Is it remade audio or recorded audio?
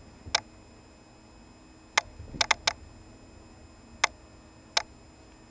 recorded